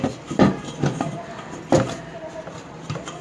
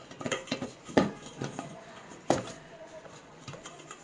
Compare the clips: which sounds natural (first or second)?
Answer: first